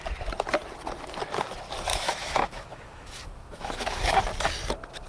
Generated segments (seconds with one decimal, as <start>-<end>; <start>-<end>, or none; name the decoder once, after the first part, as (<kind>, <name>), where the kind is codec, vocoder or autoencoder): 1.9-4.2 (autoencoder, DAC-VAE)